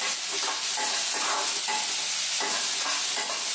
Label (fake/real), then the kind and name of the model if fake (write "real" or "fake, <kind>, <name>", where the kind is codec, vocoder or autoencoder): real